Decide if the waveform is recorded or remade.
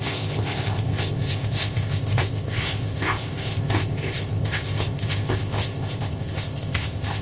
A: remade